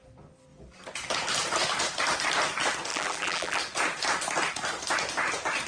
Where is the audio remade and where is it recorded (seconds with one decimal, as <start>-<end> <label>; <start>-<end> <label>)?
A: 0.0-2.9 recorded; 2.9-3.6 remade; 3.6-5.7 recorded